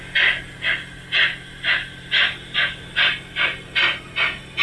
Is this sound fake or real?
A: real